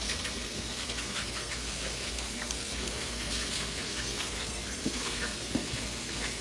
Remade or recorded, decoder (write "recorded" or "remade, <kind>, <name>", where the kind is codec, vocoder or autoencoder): remade, codec, SNAC